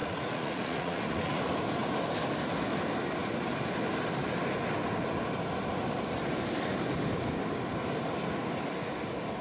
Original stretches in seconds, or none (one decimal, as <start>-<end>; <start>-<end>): 1.4-9.4